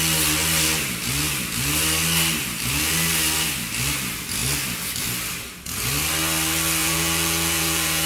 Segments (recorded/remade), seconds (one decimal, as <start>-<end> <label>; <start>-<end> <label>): 0.0-6.8 recorded; 6.8-8.1 remade